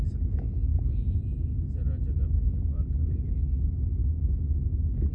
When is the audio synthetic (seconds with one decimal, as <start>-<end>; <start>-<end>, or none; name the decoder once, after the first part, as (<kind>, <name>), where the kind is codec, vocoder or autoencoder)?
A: 0.0-0.7 (autoencoder, DAC-VAE); 3.1-5.1